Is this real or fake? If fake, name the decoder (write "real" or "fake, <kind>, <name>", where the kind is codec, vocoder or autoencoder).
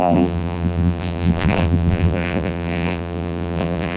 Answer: fake, vocoder, BigVGAN v2